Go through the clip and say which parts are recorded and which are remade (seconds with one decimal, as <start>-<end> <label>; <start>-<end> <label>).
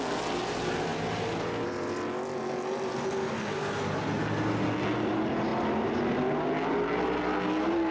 0.0-7.9 recorded